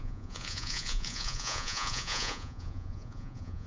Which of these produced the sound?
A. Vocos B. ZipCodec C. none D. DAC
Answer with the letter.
A